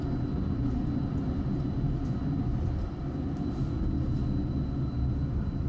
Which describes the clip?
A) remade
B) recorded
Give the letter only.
B